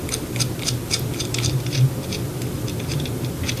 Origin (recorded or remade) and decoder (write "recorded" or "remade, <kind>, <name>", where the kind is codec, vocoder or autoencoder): recorded